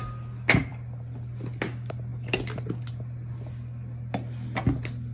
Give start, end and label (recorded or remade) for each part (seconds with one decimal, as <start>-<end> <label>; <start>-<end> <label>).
0.0-5.1 recorded